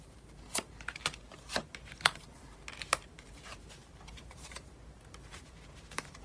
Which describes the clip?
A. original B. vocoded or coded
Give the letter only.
B